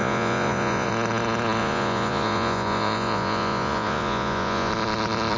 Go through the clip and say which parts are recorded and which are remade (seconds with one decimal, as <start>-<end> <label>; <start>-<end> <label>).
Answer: 0.0-0.9 remade; 0.9-1.6 recorded; 1.6-4.7 remade; 4.7-5.4 recorded